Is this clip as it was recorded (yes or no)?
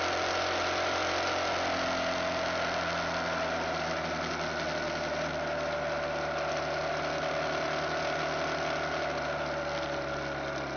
yes